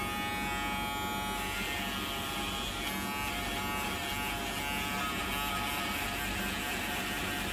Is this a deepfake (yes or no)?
no